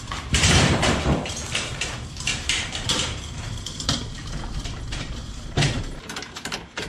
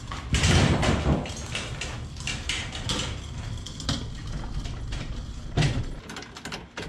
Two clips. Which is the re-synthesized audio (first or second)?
first